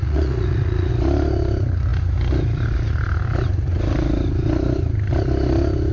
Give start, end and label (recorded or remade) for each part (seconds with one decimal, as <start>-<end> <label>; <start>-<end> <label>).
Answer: 0.0-0.9 remade; 0.9-5.9 recorded